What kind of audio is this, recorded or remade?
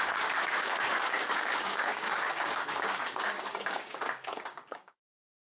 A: remade